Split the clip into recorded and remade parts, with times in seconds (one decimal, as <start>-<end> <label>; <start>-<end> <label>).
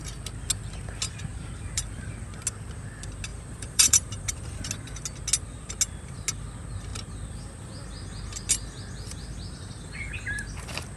0.0-3.3 recorded; 3.3-4.7 remade; 4.7-11.0 recorded